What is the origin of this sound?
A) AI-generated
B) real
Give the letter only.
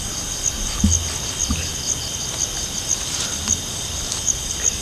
B